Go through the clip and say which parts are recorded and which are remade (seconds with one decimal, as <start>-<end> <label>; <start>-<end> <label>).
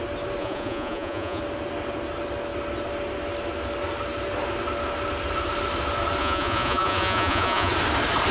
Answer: 0.0-0.4 recorded; 0.4-1.4 remade; 1.4-6.2 recorded; 6.2-7.7 remade; 7.7-8.3 recorded